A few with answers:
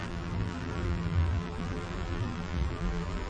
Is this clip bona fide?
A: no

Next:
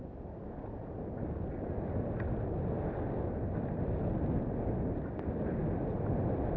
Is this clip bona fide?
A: yes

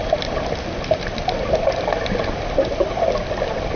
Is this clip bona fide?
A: yes